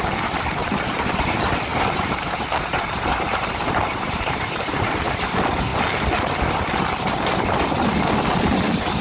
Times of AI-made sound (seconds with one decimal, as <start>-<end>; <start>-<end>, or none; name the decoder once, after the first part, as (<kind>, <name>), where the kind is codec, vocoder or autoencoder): 0.6-1.2 (vocoder, BigVGAN v2); 1.7-5.0